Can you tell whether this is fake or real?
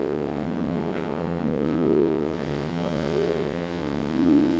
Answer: fake